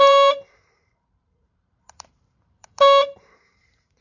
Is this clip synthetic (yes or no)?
yes